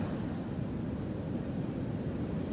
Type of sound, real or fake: real